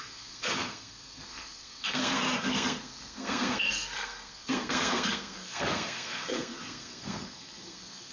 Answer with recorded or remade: remade